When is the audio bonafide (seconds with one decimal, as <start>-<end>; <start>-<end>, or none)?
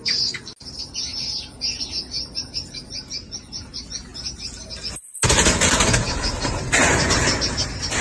0.0-8.0